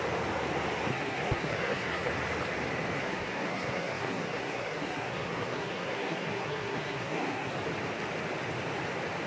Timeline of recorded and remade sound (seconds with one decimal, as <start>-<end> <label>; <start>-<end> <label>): 0.0-0.9 recorded; 0.9-2.1 remade; 2.1-3.0 recorded; 3.0-7.5 remade; 7.5-9.3 recorded